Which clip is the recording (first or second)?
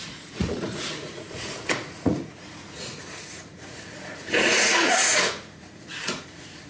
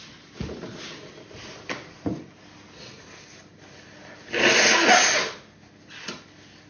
second